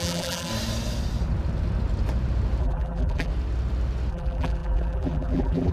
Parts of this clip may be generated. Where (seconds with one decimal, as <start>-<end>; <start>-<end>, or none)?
0.0-0.5; 2.6-3.3; 4.1-5.7